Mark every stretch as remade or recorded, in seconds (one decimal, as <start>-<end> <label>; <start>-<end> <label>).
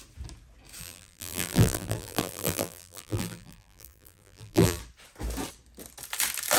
0.0-0.8 recorded; 0.8-4.8 remade; 4.8-6.6 recorded